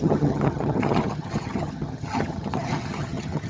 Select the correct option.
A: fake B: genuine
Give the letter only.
A